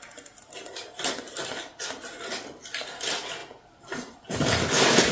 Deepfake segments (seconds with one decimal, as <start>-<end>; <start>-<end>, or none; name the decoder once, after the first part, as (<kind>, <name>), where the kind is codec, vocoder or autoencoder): none